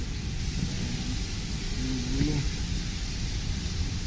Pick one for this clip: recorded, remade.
recorded